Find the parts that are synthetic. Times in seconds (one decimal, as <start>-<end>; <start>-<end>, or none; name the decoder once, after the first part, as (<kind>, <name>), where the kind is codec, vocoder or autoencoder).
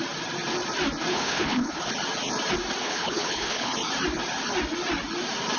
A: 1.1-1.9 (codec, HILCodec); 2.8-3.7